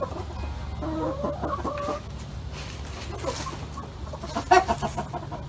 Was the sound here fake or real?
real